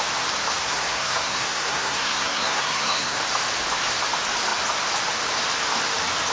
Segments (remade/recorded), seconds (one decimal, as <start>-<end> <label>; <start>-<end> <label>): 0.0-0.6 recorded; 0.6-3.2 remade; 3.2-6.3 recorded